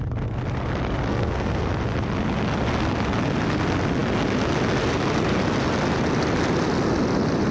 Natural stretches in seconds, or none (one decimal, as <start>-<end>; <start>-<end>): 0.0-1.1; 1.7-7.5